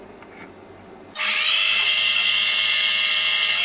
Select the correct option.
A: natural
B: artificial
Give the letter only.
A